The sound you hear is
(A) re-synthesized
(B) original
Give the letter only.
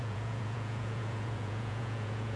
A